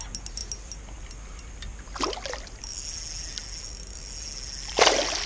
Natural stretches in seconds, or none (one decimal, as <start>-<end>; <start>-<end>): 0.0-5.3